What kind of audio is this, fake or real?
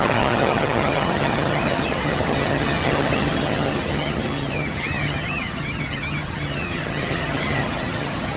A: fake